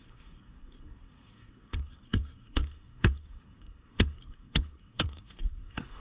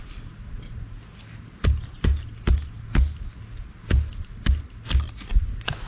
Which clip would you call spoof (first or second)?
first